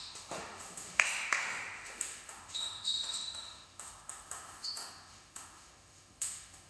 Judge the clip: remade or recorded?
remade